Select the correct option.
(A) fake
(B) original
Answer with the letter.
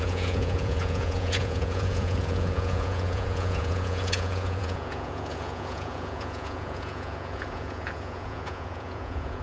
A